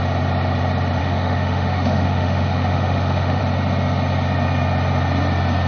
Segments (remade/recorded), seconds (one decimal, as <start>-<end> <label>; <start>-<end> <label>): 0.0-1.0 recorded; 1.0-3.4 remade; 3.4-5.7 recorded